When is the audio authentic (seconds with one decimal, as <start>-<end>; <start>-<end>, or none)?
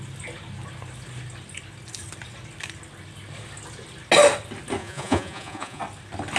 0.0-4.8; 5.8-6.4